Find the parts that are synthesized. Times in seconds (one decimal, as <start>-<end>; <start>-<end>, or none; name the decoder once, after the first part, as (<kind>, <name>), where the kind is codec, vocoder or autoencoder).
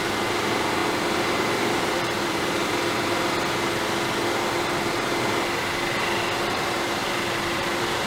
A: 0.0-0.8 (vocoder, BigVGAN v2); 1.4-2.6; 6.4-8.1